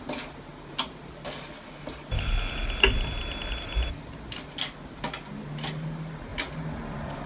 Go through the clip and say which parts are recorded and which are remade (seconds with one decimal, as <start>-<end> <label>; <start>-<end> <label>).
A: 0.0-6.3 recorded; 6.3-7.3 remade